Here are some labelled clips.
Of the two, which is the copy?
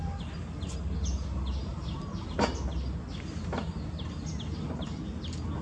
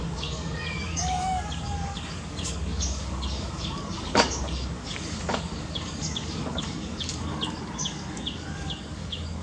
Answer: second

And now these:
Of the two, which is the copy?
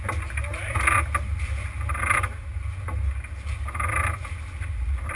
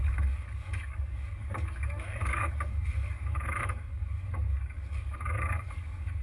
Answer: second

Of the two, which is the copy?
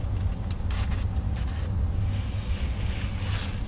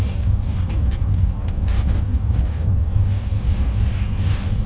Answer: second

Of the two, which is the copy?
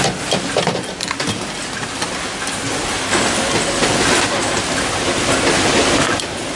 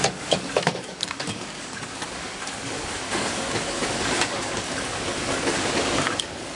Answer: second